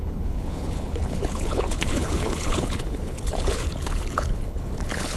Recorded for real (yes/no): no